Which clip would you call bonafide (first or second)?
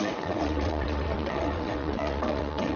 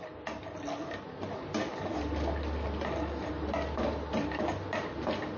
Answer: second